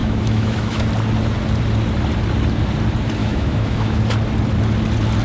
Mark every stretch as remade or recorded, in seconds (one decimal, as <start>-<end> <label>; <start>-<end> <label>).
0.0-0.9 remade; 0.9-3.2 recorded; 3.2-4.0 remade; 4.0-5.2 recorded